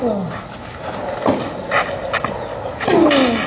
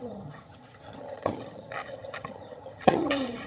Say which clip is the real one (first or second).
first